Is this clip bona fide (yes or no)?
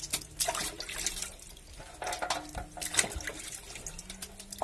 yes